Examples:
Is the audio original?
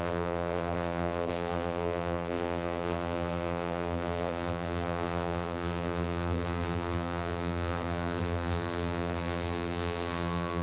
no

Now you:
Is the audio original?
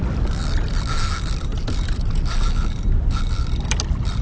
yes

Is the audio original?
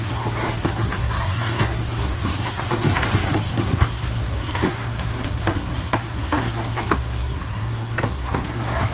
no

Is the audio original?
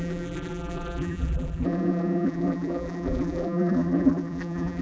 no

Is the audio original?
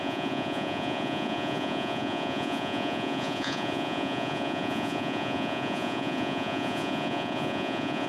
no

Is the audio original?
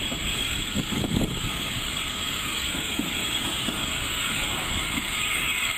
no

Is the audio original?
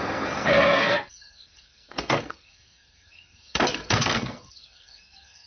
no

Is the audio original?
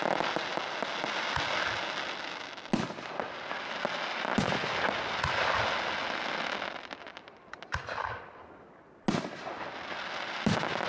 yes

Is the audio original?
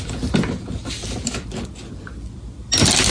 yes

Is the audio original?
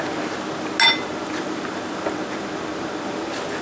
yes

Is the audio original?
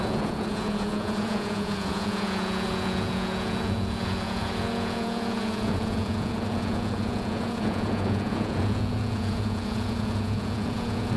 no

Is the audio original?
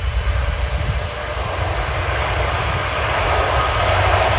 yes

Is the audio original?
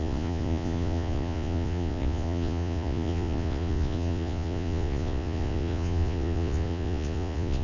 no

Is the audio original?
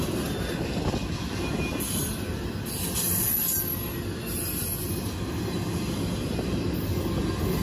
yes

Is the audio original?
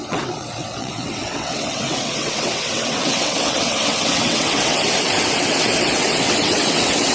no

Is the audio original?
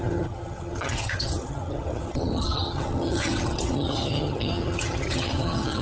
no